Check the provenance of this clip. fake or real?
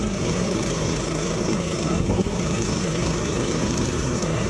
fake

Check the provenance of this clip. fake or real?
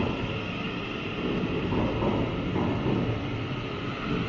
real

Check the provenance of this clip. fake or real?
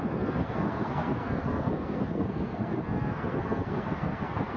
fake